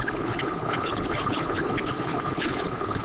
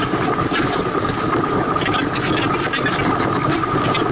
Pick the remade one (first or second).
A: first